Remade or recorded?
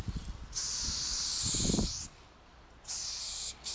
recorded